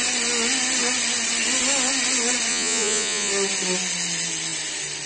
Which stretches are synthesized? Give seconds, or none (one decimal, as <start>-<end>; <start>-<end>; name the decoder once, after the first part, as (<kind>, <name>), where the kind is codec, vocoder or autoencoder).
2.5-3.3 (vocoder, Vocos)